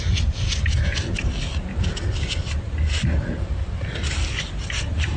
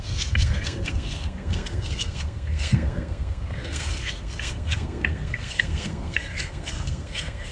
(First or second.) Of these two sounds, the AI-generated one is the second